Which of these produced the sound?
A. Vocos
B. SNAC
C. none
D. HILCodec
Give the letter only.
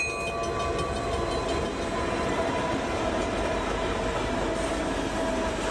C